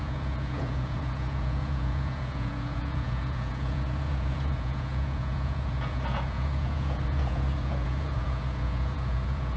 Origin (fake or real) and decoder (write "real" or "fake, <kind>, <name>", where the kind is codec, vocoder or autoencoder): fake, vocoder, Vocos